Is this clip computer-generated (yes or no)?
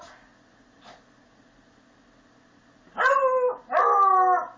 no